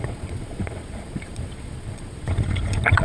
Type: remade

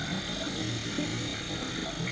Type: recorded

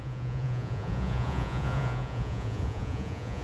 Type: remade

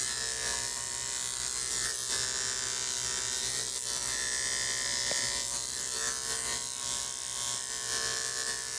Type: recorded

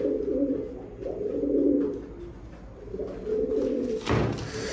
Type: recorded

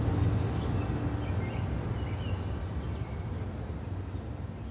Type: recorded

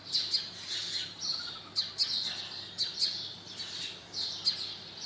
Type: recorded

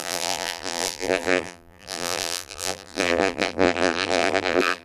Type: remade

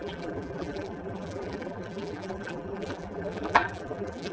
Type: remade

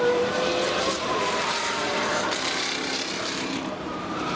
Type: remade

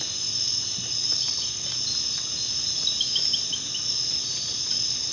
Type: recorded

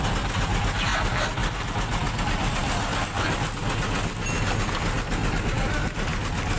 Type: recorded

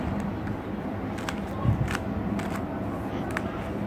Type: recorded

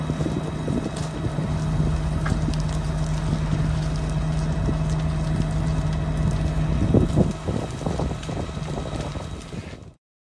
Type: recorded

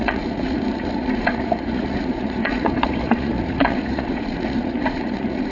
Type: remade